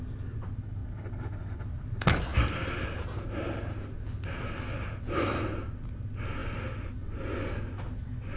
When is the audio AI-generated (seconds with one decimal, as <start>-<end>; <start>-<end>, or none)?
none